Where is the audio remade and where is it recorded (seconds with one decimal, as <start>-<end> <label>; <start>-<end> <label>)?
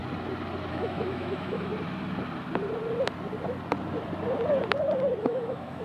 0.0-0.7 recorded; 0.7-1.7 remade; 1.7-5.2 recorded; 5.2-5.8 remade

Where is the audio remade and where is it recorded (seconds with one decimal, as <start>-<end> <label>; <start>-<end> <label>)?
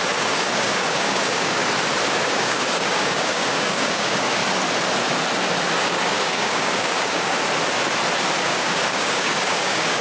0.0-1.6 remade; 1.6-2.1 recorded; 2.1-4.4 remade; 4.4-5.8 recorded; 5.8-7.4 remade; 7.4-8.4 recorded; 8.4-10.0 remade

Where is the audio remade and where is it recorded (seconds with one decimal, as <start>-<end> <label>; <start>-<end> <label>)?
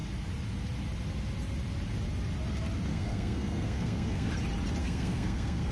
0.0-2.9 recorded; 2.9-4.3 remade; 4.3-4.8 recorded; 4.8-5.7 remade